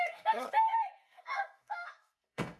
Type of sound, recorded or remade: remade